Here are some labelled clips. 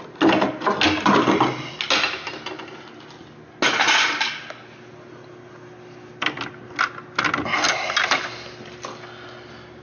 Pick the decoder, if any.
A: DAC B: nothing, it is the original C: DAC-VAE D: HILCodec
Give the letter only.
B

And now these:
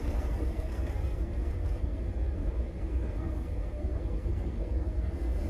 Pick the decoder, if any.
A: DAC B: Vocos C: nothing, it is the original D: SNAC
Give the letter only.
D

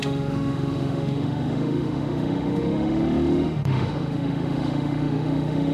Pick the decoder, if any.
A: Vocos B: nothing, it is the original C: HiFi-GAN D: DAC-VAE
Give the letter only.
D